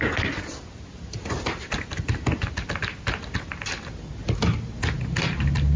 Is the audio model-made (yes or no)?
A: no